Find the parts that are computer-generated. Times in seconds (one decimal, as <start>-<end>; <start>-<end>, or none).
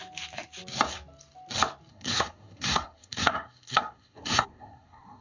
1.9-5.2